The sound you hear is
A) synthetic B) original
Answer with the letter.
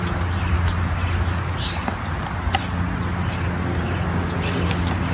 B